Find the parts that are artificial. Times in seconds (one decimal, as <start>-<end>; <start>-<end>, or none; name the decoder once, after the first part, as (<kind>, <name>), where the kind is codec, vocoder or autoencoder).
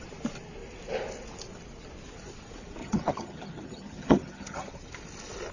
2.8-4.7 (vocoder, HiFi-GAN)